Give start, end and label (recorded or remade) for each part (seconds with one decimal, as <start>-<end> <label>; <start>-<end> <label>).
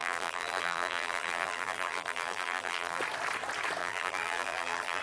0.0-3.0 remade; 3.0-3.8 recorded; 3.8-5.0 remade